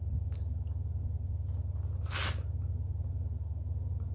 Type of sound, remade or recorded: recorded